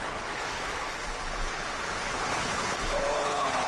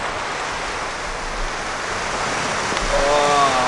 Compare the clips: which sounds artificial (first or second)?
first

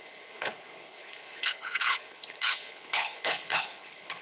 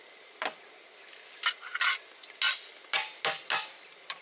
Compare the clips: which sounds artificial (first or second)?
first